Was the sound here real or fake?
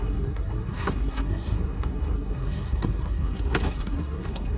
fake